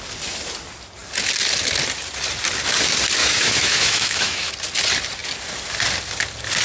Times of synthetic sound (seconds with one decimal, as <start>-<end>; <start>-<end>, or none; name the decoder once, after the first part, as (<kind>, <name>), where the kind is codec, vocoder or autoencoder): 3.2-4.5 (autoencoder, DAC-VAE)